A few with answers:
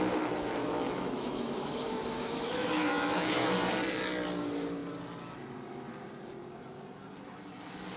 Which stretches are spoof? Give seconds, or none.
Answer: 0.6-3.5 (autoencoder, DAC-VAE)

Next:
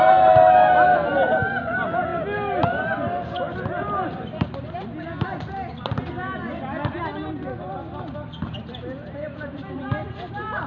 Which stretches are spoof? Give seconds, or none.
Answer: none